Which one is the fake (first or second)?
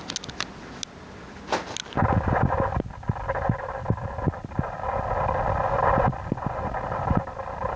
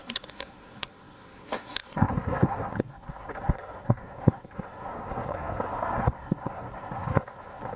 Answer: second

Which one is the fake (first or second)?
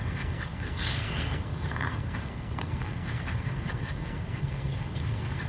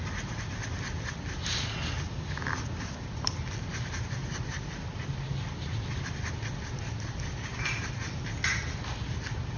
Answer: first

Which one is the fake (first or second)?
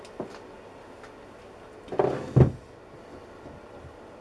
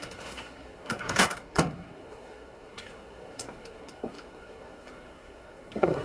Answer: second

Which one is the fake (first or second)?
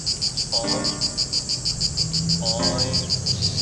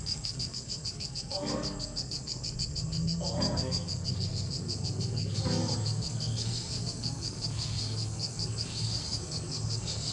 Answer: second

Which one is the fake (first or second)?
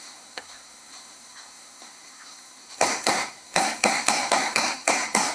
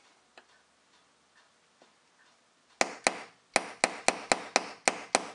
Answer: first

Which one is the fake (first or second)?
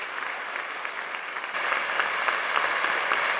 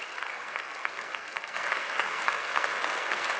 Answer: second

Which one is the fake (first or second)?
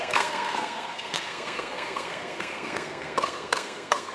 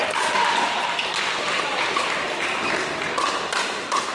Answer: first